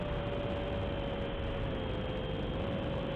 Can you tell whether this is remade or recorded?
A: recorded